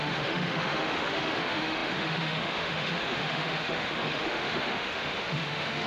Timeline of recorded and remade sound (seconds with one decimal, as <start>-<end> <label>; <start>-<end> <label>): 0.0-5.9 remade